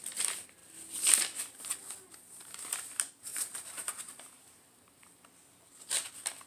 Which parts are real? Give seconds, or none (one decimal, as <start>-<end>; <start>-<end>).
0.0-3.3; 4.4-6.5